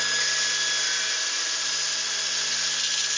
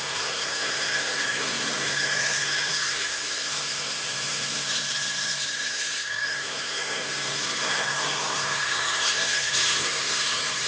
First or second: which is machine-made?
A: second